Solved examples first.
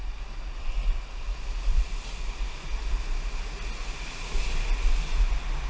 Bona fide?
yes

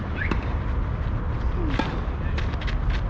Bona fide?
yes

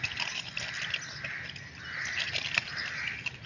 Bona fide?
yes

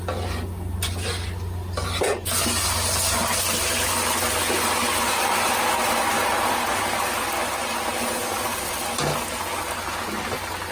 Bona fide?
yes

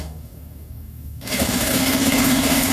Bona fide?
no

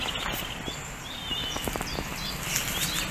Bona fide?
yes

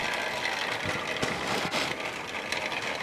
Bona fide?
yes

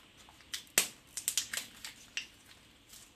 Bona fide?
yes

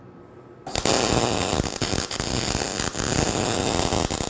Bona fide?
no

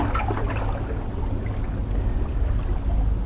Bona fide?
yes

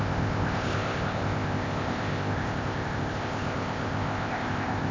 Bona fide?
no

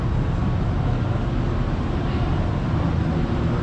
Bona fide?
yes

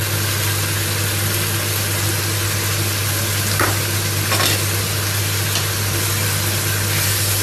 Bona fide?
yes